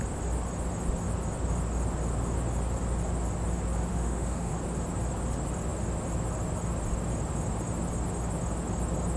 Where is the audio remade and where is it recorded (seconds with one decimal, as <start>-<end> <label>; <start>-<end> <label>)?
0.0-3.9 recorded; 3.9-4.5 remade; 4.5-9.2 recorded